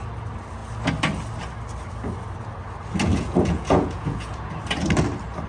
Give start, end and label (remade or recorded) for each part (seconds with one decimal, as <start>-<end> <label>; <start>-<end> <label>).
0.0-3.1 recorded; 3.1-4.5 remade; 4.5-5.5 recorded